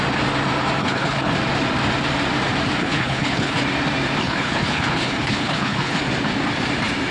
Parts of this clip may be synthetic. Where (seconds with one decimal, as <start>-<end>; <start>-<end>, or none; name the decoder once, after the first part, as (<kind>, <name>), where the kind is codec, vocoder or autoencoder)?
0.8-1.3 (codec, HILCodec); 2.8-3.6; 4.2-6.0